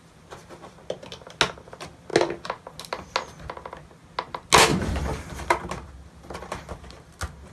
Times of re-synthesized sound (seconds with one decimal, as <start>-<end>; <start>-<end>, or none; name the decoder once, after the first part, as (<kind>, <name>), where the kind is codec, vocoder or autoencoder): 4.7-5.5 (vocoder, BigVGAN v2)